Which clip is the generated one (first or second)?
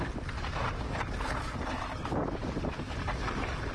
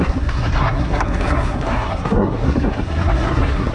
second